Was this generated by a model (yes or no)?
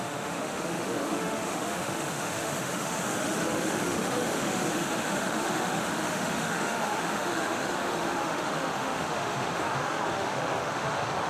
yes